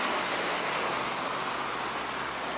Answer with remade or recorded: recorded